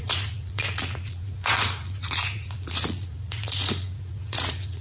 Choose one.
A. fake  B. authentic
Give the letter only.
A